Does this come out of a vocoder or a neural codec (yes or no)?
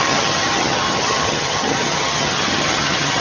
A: yes